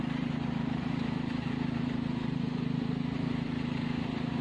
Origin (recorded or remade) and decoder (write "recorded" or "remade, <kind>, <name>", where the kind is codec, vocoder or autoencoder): remade, vocoder, BigVGAN v2